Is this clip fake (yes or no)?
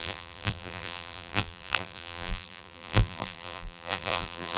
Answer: yes